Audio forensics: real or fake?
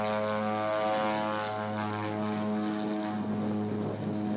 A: real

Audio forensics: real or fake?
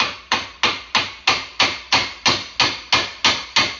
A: real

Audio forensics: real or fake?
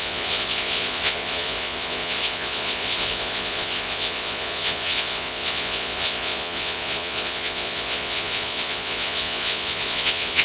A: fake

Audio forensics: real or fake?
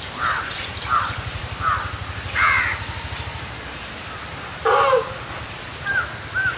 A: real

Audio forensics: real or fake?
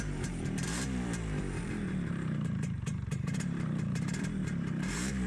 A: fake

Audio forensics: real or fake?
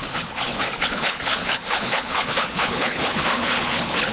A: fake